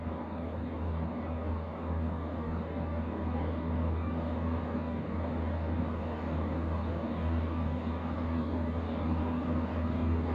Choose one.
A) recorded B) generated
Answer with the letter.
B